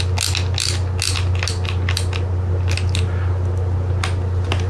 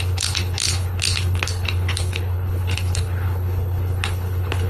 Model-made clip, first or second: second